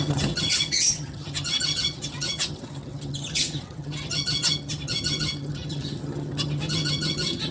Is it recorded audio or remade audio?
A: remade